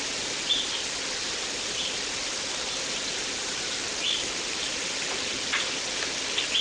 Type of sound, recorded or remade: recorded